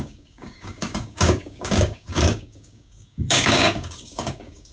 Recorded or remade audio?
remade